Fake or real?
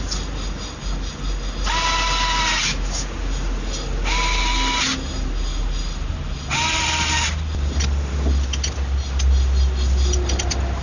real